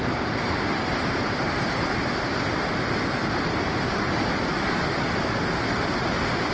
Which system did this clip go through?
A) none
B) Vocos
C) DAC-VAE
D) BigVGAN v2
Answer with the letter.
A